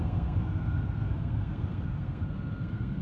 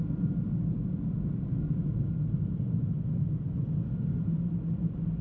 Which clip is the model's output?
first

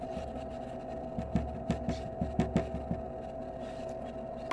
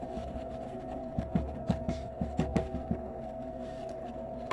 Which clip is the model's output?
second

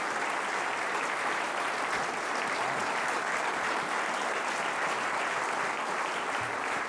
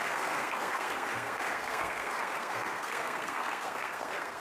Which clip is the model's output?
second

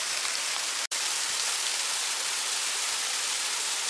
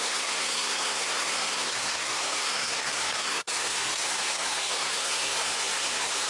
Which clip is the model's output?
second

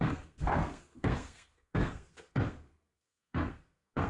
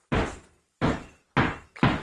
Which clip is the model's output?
first